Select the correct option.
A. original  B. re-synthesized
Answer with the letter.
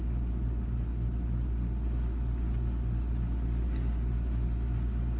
A